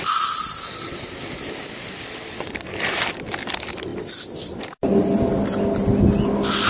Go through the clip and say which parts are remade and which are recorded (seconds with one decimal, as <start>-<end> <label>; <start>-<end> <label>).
0.0-6.7 recorded